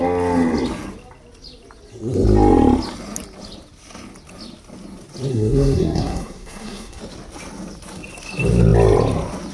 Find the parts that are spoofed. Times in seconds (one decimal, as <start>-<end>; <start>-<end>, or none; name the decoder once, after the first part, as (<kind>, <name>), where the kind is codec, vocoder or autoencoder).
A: 5.3-7.0 (codec, SNAC)